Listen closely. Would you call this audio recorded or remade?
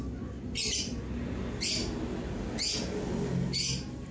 recorded